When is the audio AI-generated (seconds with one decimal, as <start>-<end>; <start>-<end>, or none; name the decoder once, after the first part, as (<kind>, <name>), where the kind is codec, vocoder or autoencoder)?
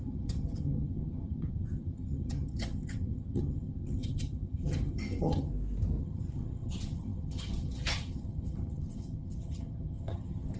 0.0-5.5 (vocoder, HiFi-GAN); 6.0-10.6